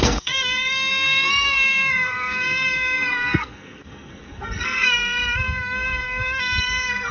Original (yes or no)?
no